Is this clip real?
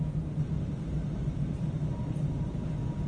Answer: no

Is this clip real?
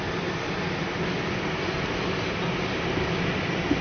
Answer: yes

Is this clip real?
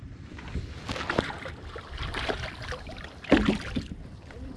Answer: yes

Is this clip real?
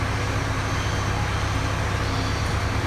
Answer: yes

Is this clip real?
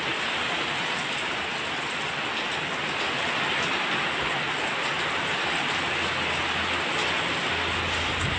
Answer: yes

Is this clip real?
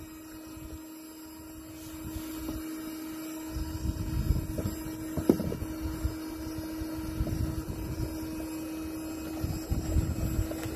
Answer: yes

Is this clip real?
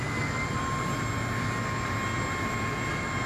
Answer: yes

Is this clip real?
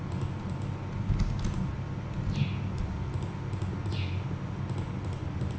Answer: yes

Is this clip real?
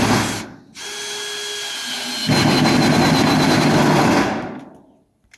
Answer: yes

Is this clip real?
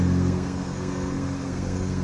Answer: no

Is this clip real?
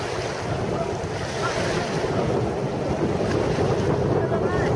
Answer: yes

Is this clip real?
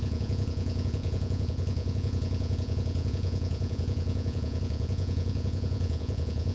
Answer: no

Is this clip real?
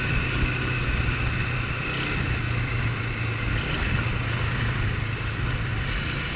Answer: yes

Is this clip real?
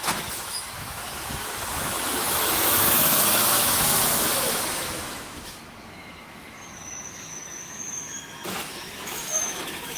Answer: no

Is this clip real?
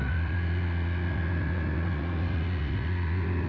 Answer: no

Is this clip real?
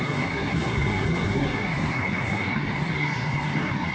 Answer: no